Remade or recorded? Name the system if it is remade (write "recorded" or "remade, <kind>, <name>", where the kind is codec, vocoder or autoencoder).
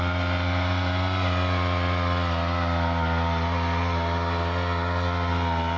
recorded